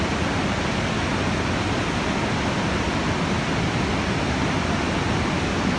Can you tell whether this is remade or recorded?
recorded